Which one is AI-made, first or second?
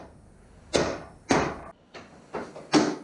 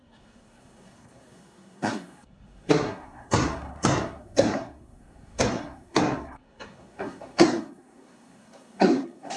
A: second